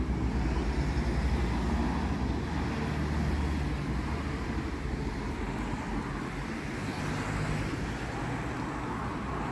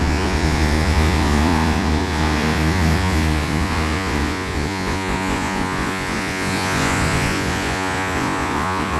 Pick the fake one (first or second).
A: second